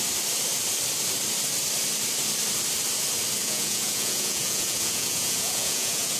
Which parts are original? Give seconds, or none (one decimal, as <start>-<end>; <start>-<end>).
0.0-3.4